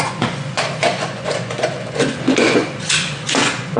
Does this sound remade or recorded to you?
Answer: remade